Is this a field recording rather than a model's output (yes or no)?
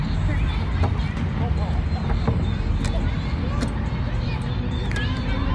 yes